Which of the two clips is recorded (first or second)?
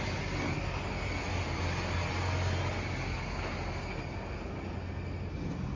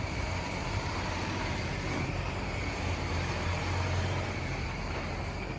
first